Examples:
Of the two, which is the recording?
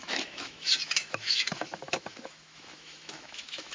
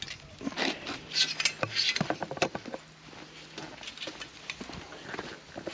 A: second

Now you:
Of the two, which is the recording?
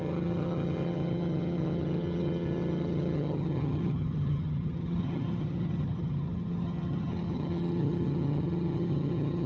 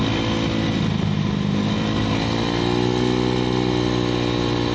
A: second